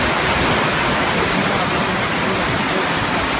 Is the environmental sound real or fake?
real